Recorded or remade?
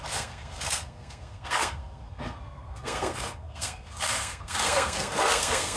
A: remade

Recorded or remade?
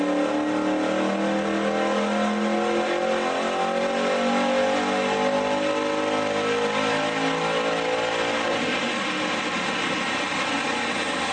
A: recorded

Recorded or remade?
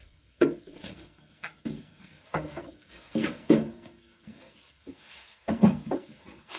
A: remade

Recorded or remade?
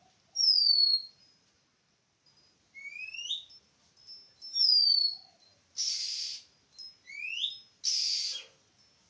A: recorded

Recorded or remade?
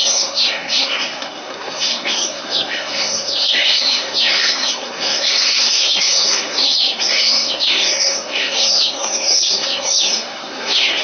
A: remade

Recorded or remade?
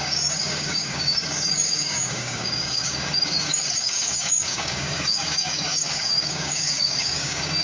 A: remade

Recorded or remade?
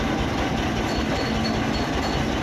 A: recorded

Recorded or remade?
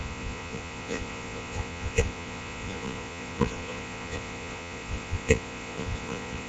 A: remade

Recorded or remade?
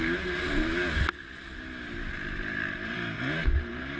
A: recorded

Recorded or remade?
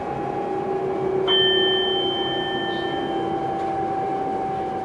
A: recorded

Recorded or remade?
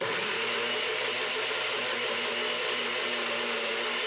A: recorded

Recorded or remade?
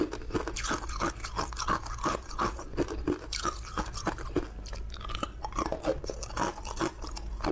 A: recorded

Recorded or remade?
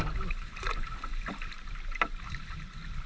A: recorded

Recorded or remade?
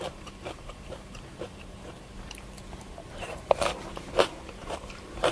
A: remade